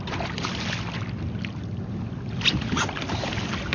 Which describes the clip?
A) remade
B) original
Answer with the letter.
B